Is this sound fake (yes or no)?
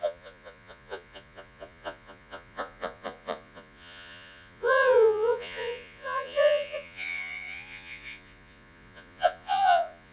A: yes